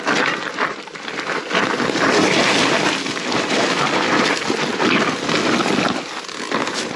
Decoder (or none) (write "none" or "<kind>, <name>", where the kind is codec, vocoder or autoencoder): none